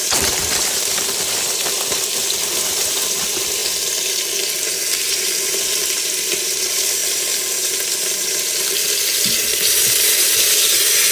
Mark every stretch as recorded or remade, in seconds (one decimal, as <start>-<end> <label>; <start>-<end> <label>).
0.0-3.6 remade; 3.6-4.8 recorded; 4.8-7.0 remade; 7.0-11.1 recorded